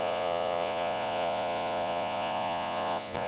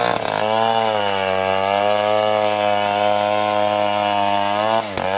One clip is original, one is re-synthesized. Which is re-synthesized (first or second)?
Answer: first